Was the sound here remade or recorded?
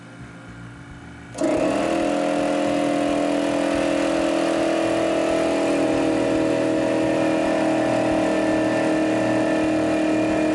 recorded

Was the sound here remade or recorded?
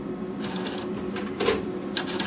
recorded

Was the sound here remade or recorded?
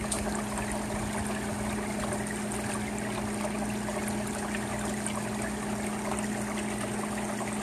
recorded